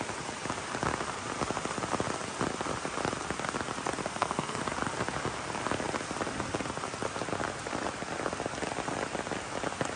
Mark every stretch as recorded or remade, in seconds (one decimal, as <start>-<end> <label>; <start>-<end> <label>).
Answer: 0.0-4.0 recorded; 4.0-4.6 remade; 4.6-10.0 recorded